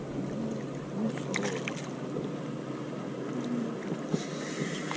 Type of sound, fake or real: real